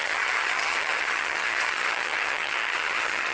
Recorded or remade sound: remade